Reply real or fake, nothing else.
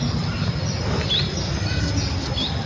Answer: real